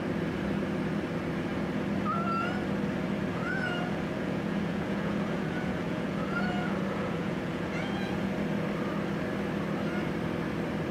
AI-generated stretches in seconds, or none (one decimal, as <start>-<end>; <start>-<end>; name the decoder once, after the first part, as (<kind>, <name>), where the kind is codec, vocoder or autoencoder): 3.3-8.3 (vocoder, Vocos)